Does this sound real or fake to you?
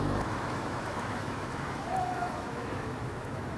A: fake